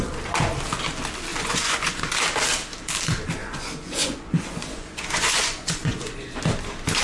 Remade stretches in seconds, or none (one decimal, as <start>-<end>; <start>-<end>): 1.3-2.0; 3.4-6.4